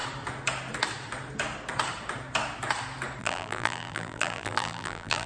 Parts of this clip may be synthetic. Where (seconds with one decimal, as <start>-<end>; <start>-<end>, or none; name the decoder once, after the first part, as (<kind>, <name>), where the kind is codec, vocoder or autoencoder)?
3.2-5.3 (vocoder, BigVGAN v2)